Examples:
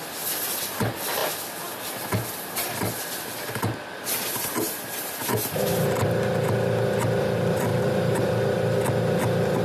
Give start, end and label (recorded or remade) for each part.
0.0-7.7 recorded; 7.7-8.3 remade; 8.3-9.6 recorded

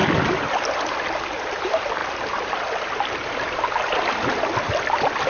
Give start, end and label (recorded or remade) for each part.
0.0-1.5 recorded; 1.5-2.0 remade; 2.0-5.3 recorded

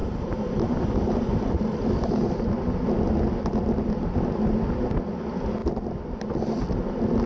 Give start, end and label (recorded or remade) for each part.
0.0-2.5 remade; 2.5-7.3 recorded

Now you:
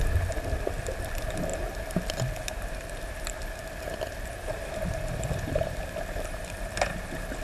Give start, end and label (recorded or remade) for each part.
0.0-1.5 recorded; 1.5-5.8 remade; 5.8-7.4 recorded

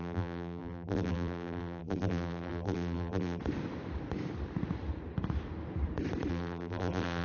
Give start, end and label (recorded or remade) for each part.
0.0-3.4 remade; 3.4-6.3 recorded; 6.3-7.2 remade

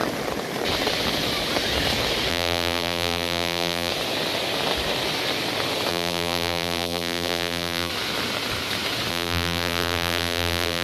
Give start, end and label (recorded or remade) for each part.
0.0-2.3 recorded; 2.3-3.9 remade; 3.9-5.9 recorded; 5.9-7.9 remade; 7.9-9.1 recorded; 9.1-10.8 remade

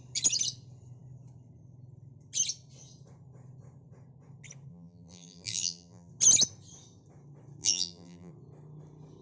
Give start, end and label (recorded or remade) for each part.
0.0-4.7 recorded; 4.7-6.1 remade; 6.1-7.6 recorded; 7.6-8.3 remade; 8.3-9.2 recorded

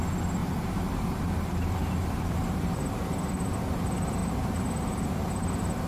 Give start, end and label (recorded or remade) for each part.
0.0-0.4 recorded; 0.4-3.5 remade; 3.5-4.2 recorded; 4.2-5.4 remade; 5.4-5.9 recorded